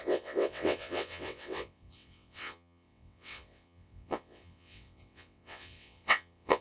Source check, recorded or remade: remade